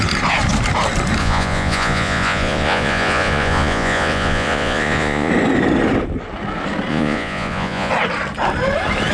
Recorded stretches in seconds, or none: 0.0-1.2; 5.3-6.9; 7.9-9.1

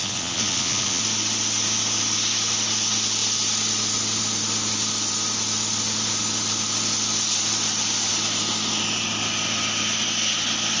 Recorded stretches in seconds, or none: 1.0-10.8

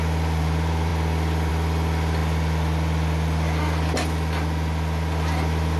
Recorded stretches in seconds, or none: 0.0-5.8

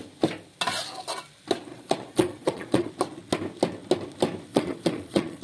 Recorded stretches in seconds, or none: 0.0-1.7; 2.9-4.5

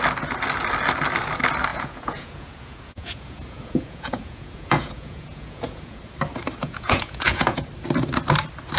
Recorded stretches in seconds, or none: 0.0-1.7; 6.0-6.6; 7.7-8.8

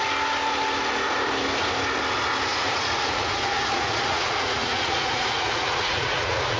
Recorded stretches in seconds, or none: 0.0-2.5

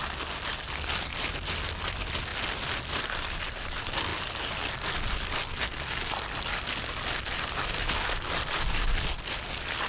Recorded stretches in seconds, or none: 0.0-9.9

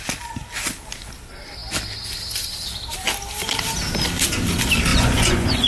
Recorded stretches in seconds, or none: 0.0-4.9